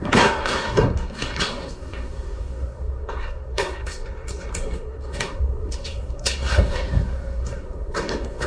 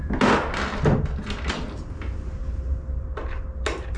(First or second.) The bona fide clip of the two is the second